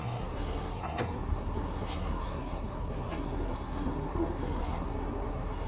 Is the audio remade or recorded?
remade